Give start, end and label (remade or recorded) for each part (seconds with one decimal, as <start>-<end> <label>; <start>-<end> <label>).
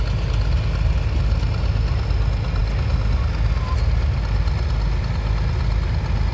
0.0-6.3 recorded